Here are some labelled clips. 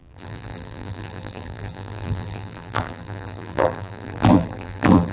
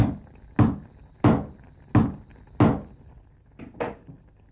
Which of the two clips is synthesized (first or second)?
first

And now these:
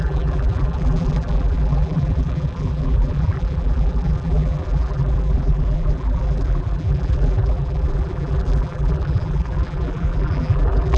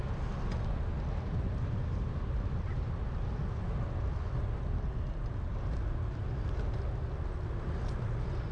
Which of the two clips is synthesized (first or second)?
first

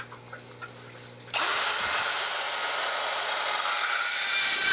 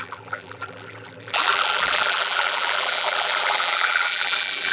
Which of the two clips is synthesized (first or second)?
second